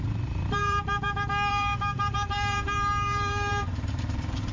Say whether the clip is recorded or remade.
remade